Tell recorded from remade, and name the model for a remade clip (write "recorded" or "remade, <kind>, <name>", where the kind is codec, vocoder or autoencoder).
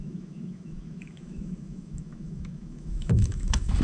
remade, autoencoder, DAC-VAE